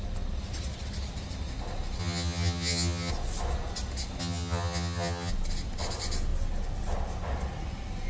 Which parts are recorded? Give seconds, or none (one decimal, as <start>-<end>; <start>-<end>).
0.0-2.0; 3.1-4.2; 5.3-8.1

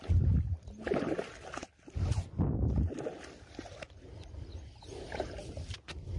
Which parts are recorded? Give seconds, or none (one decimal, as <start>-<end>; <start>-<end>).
0.0-6.2

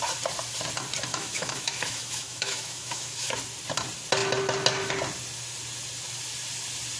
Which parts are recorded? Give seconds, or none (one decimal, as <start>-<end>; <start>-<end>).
0.0-1.1; 3.3-7.0